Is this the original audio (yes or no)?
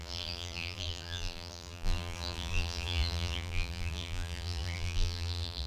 no